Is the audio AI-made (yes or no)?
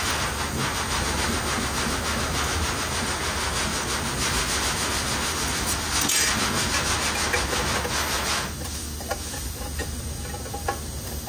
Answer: no